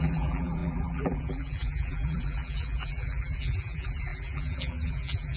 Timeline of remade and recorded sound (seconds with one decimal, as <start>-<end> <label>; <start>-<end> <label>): 0.0-5.4 remade